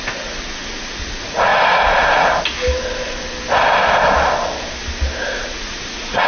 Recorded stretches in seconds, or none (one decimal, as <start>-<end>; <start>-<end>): 1.5-5.3